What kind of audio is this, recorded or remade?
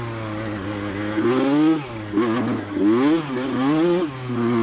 recorded